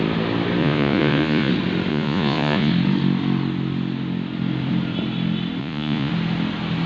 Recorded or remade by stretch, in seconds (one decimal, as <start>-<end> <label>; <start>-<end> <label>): 0.0-0.6 recorded; 0.6-1.5 remade; 1.5-1.9 recorded; 1.9-2.7 remade; 2.7-5.6 recorded; 5.6-6.1 remade; 6.1-6.9 recorded